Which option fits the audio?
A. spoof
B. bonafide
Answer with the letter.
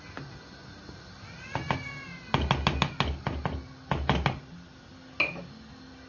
B